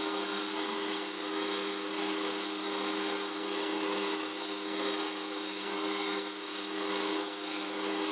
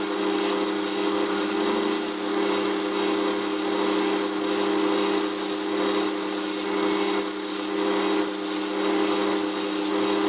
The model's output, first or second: first